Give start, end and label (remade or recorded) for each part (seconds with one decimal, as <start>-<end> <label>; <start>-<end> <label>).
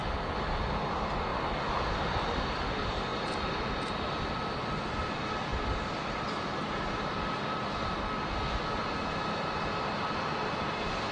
0.0-3.1 recorded; 3.1-4.3 remade; 4.3-5.5 recorded; 5.5-8.0 remade; 8.0-11.1 recorded